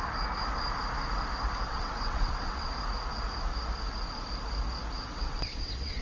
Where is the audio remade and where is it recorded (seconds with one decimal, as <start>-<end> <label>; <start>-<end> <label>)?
0.0-1.7 recorded; 1.7-2.7 remade; 2.7-5.1 recorded; 5.1-6.0 remade